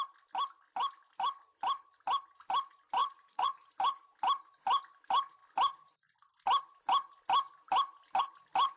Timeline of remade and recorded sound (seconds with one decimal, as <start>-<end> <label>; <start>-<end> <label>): 0.0-3.0 recorded; 3.0-3.7 remade; 3.7-8.8 recorded